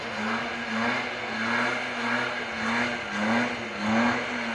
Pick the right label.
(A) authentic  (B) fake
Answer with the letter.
A